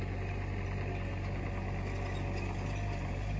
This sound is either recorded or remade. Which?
recorded